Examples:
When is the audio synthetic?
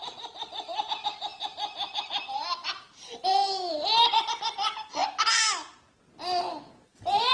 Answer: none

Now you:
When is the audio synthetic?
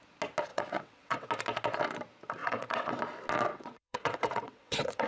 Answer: 0.5-1.3; 2.4-3.0; 3.5-5.1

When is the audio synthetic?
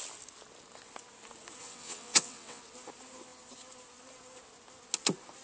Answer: 1.6-2.6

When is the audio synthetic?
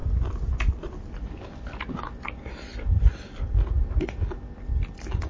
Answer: none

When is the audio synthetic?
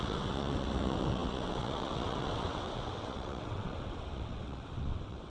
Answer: 0.0-5.3